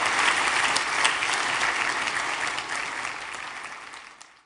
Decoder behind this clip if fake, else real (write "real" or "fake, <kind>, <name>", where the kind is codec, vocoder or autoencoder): real